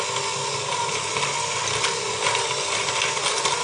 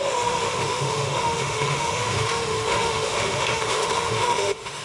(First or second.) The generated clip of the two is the second